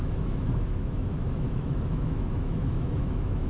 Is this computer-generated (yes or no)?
yes